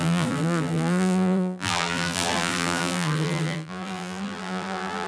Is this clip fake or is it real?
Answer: fake